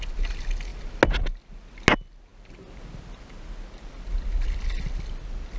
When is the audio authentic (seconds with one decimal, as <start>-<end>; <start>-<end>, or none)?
0.0-5.6